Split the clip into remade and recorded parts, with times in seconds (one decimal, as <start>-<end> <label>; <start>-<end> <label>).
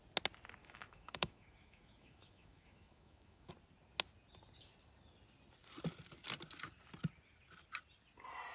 0.0-0.6 recorded; 0.6-3.5 remade; 3.5-8.5 recorded